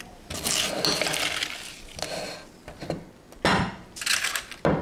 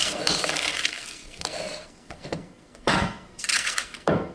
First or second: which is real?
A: first